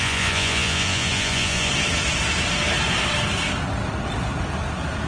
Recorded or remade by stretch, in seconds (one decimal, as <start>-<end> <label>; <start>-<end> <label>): 0.0-1.7 remade; 1.7-5.1 recorded